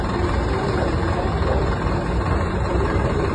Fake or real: fake